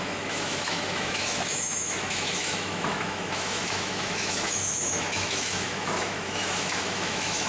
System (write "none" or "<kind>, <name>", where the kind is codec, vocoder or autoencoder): autoencoder, DAC-VAE